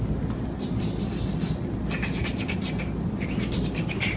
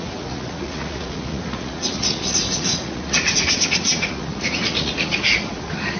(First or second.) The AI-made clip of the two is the second